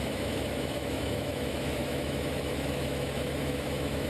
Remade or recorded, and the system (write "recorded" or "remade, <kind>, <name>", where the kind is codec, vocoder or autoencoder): remade, autoencoder, DAC-VAE